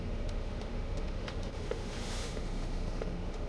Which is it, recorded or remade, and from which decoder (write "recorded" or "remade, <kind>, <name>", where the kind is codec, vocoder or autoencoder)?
remade, autoencoder, DAC-VAE